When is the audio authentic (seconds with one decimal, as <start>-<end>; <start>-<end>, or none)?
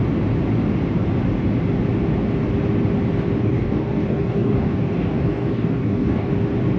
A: 0.0-3.4; 6.3-6.8